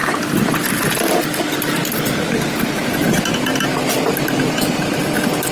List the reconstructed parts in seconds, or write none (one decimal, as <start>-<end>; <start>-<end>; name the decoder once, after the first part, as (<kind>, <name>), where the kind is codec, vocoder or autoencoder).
none